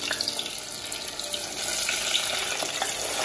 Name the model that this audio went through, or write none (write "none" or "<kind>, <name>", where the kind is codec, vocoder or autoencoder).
none